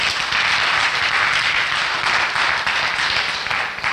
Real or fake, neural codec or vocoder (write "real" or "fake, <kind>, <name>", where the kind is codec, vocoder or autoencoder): real